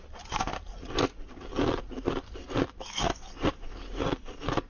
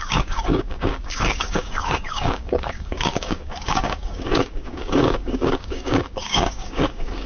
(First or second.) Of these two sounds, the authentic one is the first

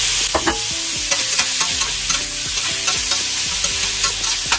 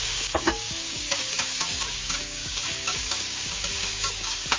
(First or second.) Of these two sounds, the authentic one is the first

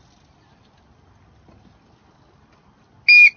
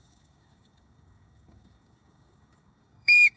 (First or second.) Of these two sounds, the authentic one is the first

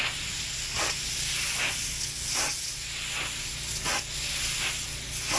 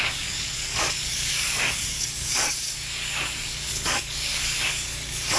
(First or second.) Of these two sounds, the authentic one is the first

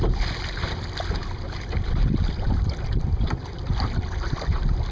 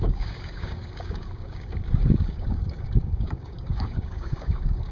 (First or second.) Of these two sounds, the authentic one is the first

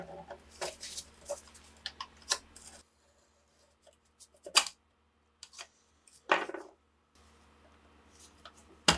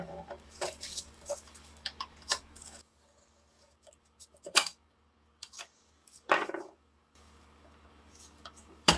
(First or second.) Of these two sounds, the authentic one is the first